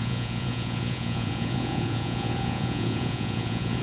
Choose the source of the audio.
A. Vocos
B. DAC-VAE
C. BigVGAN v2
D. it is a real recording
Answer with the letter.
A